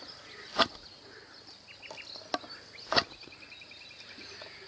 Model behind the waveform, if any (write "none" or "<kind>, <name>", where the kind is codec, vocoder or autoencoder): none